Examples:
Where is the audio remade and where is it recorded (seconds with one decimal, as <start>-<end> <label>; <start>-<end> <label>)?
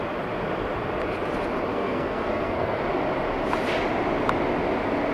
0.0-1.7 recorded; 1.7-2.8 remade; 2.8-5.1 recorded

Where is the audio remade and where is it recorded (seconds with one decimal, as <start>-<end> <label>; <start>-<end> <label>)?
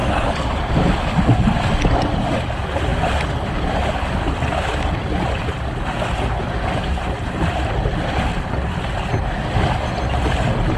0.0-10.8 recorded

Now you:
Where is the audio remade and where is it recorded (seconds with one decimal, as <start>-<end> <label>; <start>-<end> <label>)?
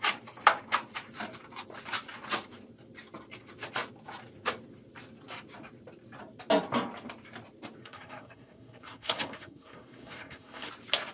0.0-7.8 recorded; 7.8-10.7 remade; 10.7-11.1 recorded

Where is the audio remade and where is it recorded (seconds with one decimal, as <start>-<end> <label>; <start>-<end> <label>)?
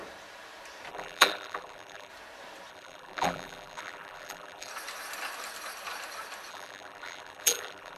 0.0-0.9 recorded; 0.9-2.1 remade; 2.1-2.7 recorded; 2.7-4.7 remade; 4.7-6.5 recorded; 6.5-8.0 remade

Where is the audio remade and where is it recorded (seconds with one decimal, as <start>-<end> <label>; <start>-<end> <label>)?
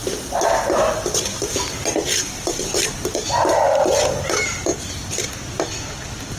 0.0-1.4 recorded; 1.4-4.7 remade; 4.7-6.4 recorded